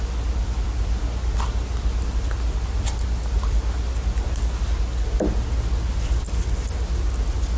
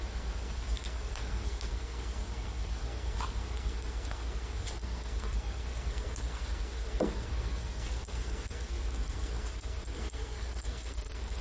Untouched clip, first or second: first